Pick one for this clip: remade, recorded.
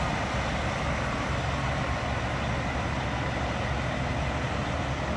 recorded